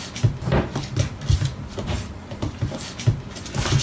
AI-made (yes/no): no